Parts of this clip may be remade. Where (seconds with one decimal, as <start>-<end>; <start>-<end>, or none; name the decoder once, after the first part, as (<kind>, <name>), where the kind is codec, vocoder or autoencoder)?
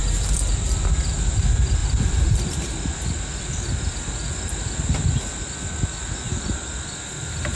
0.0-1.2 (vocoder, BigVGAN v2); 1.8-4.9